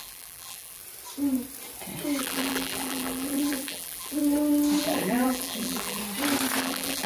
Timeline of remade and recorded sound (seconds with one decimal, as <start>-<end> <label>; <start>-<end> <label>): 0.0-0.8 remade; 0.8-2.2 recorded; 2.2-4.2 remade; 4.2-4.8 recorded; 4.8-6.0 remade; 6.0-6.6 recorded; 6.6-7.1 remade